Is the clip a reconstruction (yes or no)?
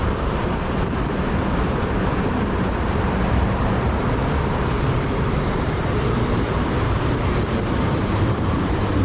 yes